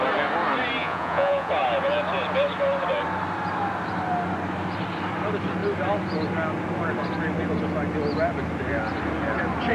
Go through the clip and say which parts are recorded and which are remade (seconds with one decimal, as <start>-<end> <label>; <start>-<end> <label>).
0.0-0.8 recorded; 0.8-1.5 remade; 1.5-9.7 recorded